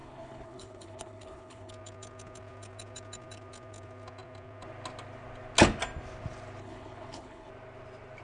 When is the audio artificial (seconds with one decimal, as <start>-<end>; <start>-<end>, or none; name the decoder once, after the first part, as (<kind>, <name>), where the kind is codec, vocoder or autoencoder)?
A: 0.0-1.7 (codec, HILCodec); 6.6-7.5